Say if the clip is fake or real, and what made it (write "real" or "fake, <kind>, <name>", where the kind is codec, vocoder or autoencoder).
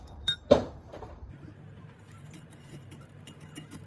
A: fake, vocoder, BigVGAN v2